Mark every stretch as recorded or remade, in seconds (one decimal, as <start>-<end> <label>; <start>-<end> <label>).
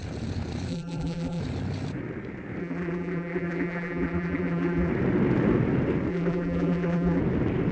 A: 0.0-0.7 recorded; 0.7-1.4 remade; 1.4-2.6 recorded; 2.6-4.9 remade; 4.9-6.1 recorded; 6.1-7.2 remade; 7.2-7.7 recorded